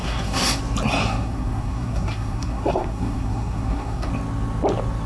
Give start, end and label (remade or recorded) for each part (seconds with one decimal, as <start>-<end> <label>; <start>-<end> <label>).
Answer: 0.0-0.6 remade; 0.6-1.0 recorded; 1.0-4.1 remade; 4.1-5.1 recorded